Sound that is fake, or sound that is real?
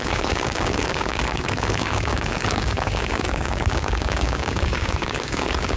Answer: fake